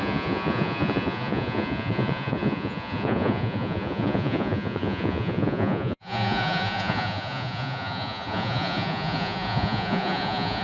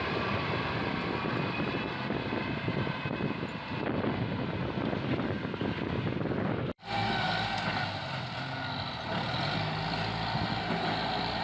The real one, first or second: second